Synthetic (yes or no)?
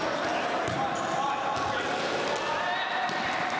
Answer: no